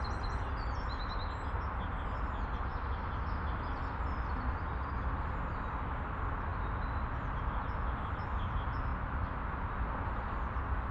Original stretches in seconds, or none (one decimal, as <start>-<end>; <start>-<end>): 0.0-10.9